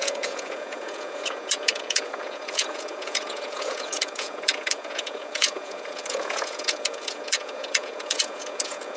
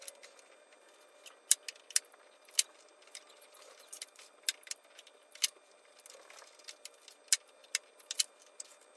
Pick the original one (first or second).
second